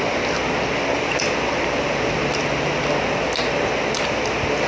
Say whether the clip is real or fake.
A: real